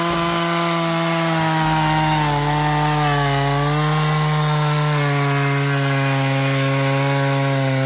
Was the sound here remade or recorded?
recorded